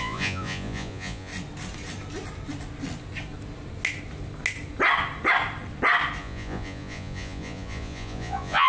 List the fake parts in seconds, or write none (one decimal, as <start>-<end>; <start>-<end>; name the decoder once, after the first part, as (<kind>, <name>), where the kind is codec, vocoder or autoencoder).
0.0-1.3 (vocoder, Vocos); 6.2-8.7